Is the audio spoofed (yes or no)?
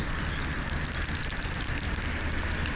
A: no